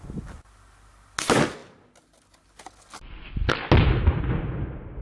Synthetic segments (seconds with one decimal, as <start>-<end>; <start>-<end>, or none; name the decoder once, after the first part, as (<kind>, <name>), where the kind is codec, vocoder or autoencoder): none